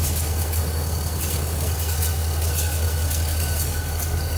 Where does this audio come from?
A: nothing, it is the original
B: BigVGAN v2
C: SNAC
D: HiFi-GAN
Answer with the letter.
C